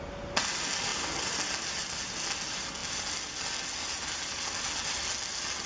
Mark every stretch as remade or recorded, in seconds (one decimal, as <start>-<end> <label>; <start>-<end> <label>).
0.0-5.7 recorded